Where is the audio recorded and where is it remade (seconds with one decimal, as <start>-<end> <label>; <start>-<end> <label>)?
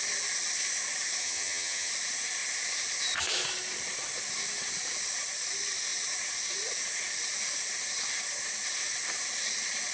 0.0-1.2 recorded; 1.2-1.9 remade; 1.9-9.9 recorded